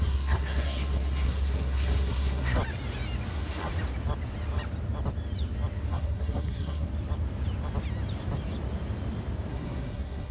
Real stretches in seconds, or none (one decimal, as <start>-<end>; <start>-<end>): 2.6-3.3; 3.7-5.9; 6.9-9.5